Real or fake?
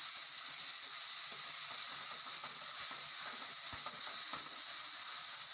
real